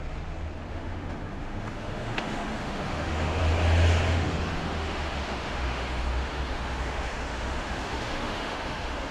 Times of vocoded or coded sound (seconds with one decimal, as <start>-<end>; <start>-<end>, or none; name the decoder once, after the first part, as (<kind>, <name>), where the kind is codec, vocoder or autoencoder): 0.7-3.4 (autoencoder, DAC-VAE); 4.1-9.1